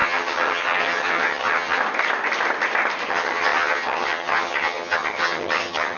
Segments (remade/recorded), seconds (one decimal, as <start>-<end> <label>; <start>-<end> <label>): 0.0-1.8 remade; 1.8-3.1 recorded; 3.1-6.0 remade